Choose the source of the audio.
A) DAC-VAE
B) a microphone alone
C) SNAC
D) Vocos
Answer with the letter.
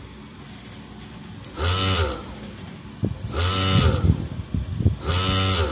B